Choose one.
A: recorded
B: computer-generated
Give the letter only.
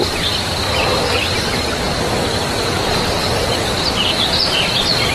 A